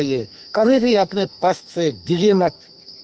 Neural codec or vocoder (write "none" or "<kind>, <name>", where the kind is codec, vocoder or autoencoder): codec, SNAC